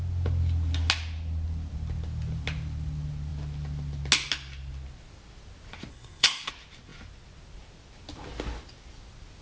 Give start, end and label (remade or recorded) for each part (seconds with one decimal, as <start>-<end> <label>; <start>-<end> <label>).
0.0-5.9 recorded; 5.9-6.5 remade; 6.5-9.4 recorded